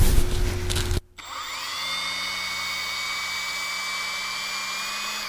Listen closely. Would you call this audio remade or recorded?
recorded